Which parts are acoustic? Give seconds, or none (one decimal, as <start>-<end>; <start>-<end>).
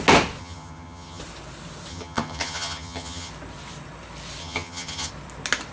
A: 0.0-0.4; 1.2-1.9; 3.3-4.4; 5.1-5.7